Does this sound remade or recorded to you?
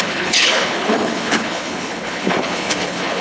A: remade